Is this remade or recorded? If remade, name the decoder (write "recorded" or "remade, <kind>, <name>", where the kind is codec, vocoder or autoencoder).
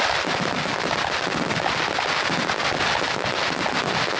recorded